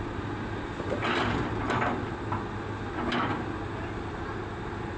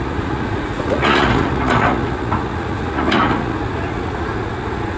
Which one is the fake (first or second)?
second